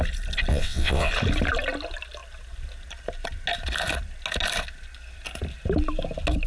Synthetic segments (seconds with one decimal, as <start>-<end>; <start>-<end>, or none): 0.5-1.1